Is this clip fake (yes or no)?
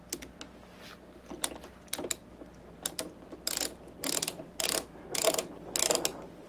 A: no